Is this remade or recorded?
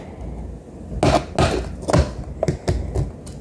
recorded